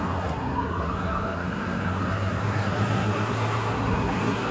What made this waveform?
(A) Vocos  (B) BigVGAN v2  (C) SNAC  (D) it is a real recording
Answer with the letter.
C